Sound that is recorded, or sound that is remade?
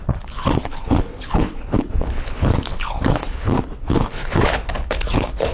remade